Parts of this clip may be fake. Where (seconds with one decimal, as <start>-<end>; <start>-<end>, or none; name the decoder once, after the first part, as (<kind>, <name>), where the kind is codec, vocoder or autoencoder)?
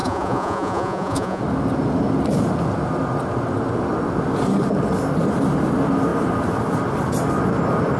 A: 0.0-1.4 (vocoder, Vocos)